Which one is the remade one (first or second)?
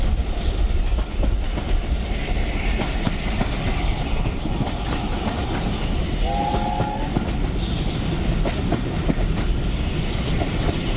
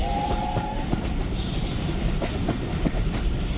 second